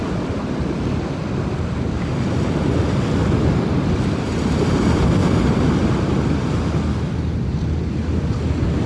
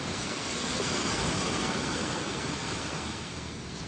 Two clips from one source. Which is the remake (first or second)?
second